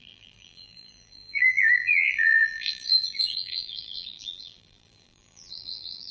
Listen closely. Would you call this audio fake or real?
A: fake